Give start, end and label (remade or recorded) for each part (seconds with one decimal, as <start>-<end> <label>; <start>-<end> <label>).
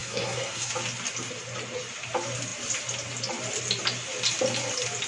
0.0-0.7 remade; 0.7-5.1 recorded